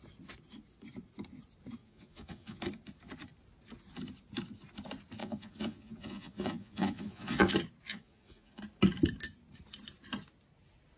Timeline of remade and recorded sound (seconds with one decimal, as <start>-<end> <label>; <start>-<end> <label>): 0.0-1.8 recorded; 1.8-2.6 remade; 2.6-5.2 recorded; 5.2-7.5 remade; 7.5-7.9 recorded; 7.9-8.6 remade; 8.6-11.0 recorded